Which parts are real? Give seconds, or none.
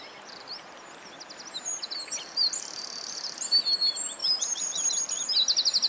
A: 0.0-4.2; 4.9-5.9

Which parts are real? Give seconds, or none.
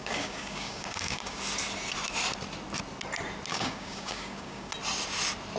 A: 1.4-3.5; 4.7-5.6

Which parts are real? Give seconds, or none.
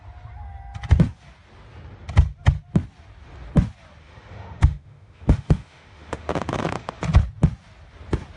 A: 0.0-4.0; 7.0-8.4